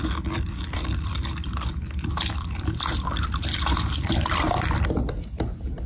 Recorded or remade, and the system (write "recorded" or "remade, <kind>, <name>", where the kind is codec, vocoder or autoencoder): remade, vocoder, BigVGAN v2